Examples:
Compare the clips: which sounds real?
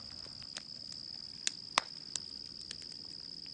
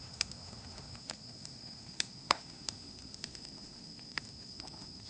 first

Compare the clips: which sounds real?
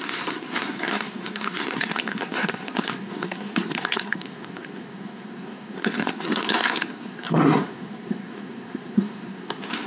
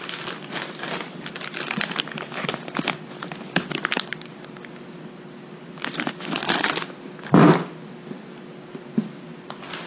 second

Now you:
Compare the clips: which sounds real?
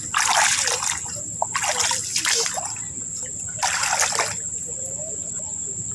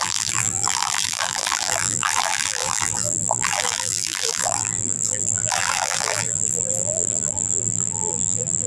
first